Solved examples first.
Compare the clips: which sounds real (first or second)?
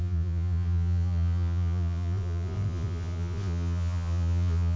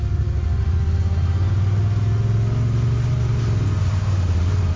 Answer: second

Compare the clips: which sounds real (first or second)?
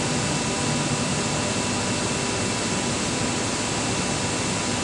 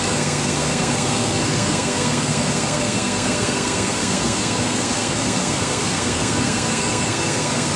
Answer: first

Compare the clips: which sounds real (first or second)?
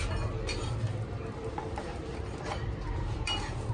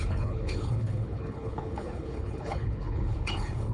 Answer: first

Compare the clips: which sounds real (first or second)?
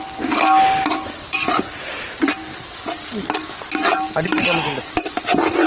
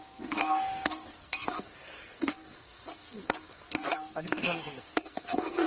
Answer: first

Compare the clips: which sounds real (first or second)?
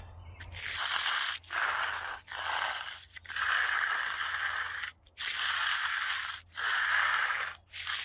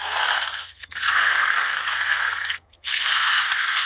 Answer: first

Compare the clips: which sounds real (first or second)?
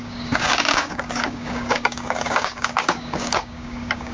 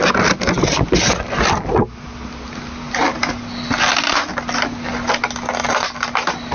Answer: second